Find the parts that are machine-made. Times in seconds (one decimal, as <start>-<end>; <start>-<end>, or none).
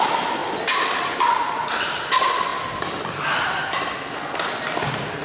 none